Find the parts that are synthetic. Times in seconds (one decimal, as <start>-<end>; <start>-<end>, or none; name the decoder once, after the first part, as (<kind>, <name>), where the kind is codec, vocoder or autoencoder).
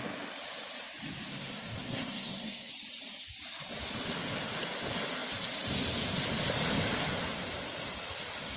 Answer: 1.3-2.7 (codec, SNAC)